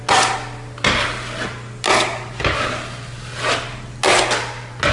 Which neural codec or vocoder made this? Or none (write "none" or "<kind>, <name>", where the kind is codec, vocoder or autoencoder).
none